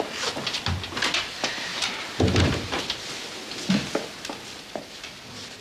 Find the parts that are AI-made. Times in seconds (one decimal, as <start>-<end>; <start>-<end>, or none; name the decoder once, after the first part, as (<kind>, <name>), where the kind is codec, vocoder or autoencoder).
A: 1.7-2.8 (vocoder, BigVGAN v2)